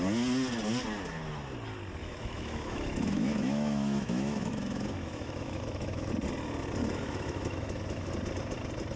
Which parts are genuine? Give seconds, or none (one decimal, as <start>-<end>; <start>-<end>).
0.0-2.0; 6.1-6.8; 8.1-9.0